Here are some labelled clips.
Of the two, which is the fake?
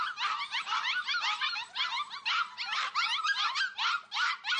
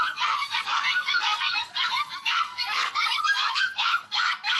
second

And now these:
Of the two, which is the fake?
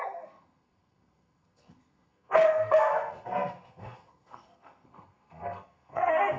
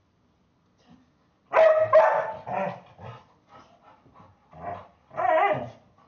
first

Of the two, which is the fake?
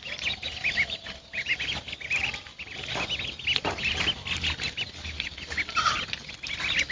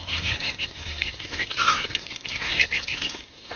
second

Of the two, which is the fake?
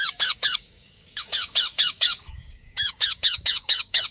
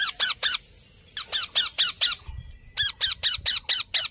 first